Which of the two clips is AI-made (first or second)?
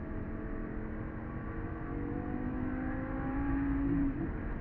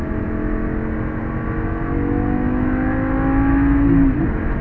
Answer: first